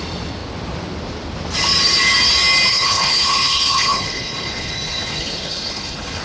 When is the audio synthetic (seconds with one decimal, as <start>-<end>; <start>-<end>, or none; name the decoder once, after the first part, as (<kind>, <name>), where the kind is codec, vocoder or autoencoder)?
2.7-6.2 (codec, HILCodec)